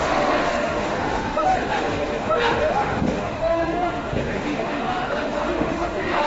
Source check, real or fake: fake